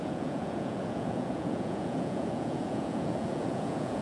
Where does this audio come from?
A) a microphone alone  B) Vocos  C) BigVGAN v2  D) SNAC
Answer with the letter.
B